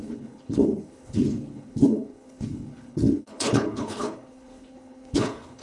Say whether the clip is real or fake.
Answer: fake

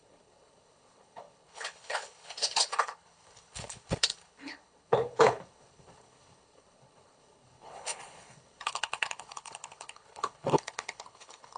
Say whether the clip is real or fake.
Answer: fake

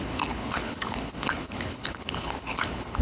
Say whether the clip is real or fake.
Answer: fake